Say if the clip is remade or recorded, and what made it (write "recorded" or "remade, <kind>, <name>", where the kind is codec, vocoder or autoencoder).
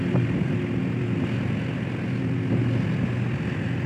recorded